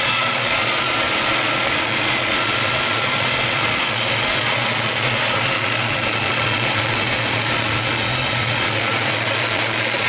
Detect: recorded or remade remade